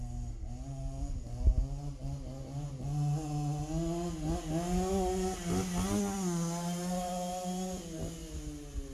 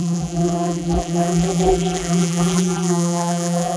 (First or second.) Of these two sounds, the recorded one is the first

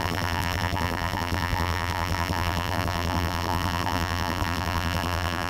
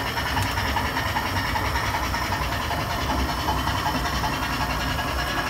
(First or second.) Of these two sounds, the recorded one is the second